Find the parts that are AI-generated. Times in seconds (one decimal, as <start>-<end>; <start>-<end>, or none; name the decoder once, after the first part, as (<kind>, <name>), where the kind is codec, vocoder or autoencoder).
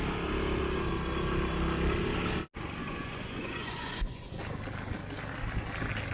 2.8-4.3 (vocoder, Vocos)